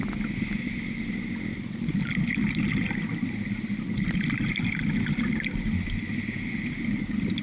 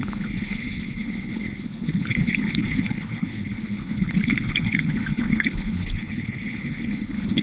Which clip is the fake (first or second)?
second